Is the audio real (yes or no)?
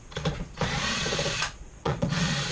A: no